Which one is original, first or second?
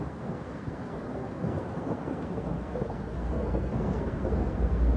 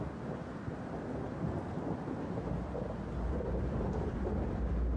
second